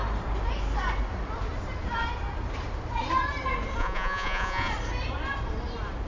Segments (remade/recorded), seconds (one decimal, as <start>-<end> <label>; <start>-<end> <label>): 0.0-3.8 recorded; 3.8-4.7 remade; 4.7-6.1 recorded